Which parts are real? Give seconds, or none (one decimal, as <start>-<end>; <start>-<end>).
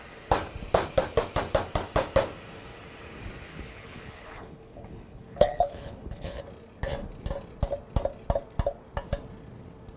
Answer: 0.0-3.5; 6.4-10.0